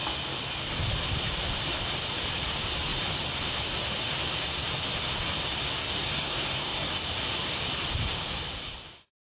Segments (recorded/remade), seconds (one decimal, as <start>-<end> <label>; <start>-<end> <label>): 0.0-6.0 recorded; 6.0-6.9 remade; 6.9-9.3 recorded